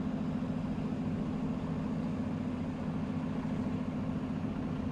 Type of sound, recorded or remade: recorded